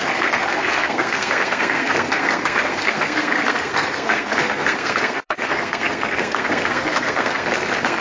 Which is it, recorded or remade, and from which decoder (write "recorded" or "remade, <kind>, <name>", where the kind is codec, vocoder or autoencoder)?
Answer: remade, codec, SNAC